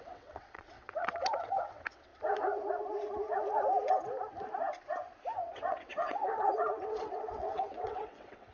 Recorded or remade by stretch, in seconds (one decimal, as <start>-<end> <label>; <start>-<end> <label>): 0.0-2.1 remade; 2.1-5.4 recorded; 5.4-8.5 remade